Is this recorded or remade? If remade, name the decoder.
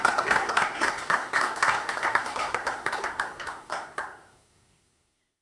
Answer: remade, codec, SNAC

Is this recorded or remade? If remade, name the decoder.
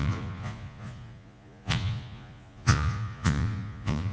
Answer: remade, vocoder, Vocos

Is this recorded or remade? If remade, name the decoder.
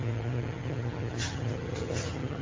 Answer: remade, vocoder, HiFi-GAN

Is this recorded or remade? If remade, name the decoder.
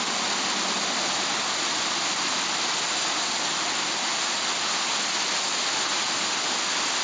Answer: recorded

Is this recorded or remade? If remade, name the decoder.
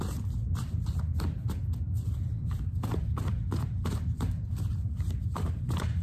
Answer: remade, vocoder, BigVGAN v2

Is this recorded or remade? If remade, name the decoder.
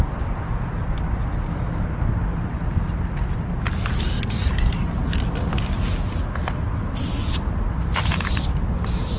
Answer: recorded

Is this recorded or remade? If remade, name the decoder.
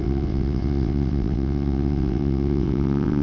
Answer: remade, vocoder, WaveNeXt